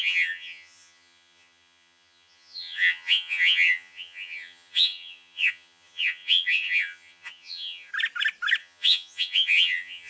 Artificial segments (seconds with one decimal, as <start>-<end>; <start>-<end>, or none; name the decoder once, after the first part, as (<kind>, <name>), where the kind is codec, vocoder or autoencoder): 0.0-7.9 (vocoder, HiFi-GAN); 8.6-10.1